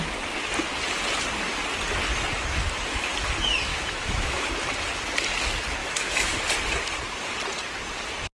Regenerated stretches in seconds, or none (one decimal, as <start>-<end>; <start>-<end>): 3.7-4.5; 5.8-6.4